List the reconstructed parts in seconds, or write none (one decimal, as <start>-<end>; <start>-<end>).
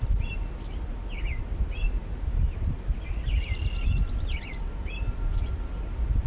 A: none